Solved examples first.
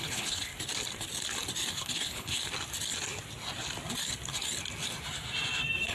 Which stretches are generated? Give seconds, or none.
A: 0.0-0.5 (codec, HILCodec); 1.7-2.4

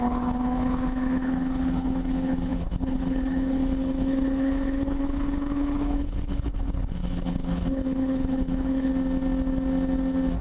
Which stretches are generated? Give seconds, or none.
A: 0.0-8.9 (codec, HILCodec)

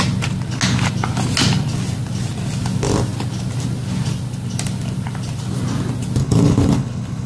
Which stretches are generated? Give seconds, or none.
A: 6.2-7.3 (codec, HILCodec)

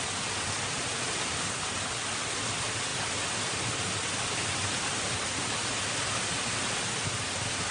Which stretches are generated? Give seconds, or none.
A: none

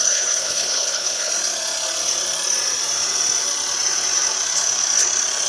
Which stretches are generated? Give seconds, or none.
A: 0.0-1.3 (codec, HILCodec)

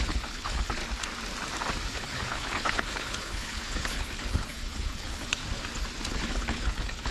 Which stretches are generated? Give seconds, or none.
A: 0.0-0.8 (codec, HILCodec); 1.9-5.4; 6.1-7.1

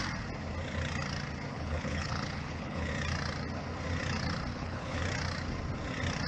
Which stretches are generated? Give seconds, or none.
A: 1.5-2.9 (codec, HILCodec); 4.5-5.0